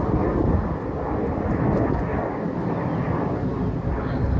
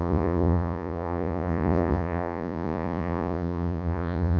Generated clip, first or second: second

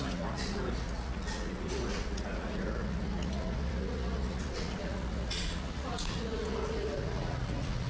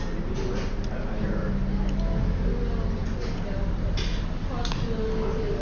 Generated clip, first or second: first